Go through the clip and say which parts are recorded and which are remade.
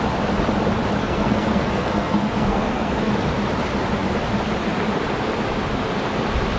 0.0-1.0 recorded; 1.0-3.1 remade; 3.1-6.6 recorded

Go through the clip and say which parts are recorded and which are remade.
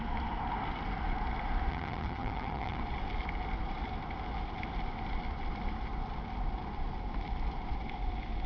0.0-1.7 recorded; 1.7-2.8 remade; 2.8-8.5 recorded